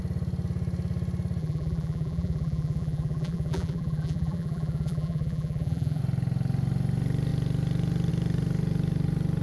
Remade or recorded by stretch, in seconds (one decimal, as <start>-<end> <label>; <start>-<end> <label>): 0.0-1.4 recorded; 1.4-6.0 remade; 6.0-9.4 recorded